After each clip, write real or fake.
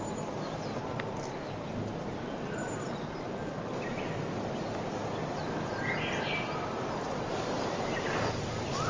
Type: fake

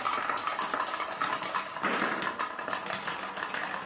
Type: real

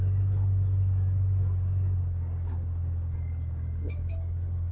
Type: real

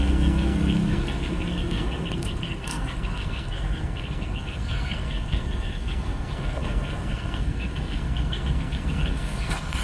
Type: fake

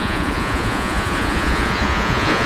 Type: fake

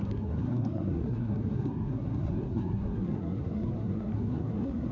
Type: fake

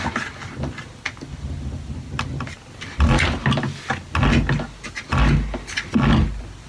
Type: real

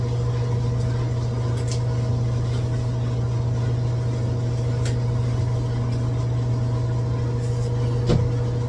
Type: real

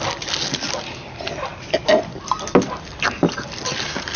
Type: real